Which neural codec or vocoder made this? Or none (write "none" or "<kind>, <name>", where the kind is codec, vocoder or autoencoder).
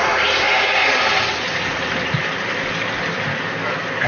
none